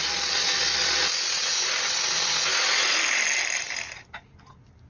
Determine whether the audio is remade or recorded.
recorded